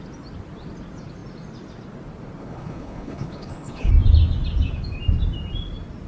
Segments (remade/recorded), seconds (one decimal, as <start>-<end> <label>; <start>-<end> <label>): 0.0-2.4 recorded; 2.4-3.9 remade; 3.9-6.1 recorded